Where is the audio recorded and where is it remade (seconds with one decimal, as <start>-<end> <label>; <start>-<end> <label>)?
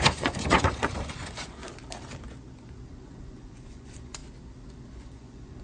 0.0-1.6 remade; 1.6-2.9 recorded; 2.9-4.2 remade; 4.2-4.9 recorded; 4.9-5.6 remade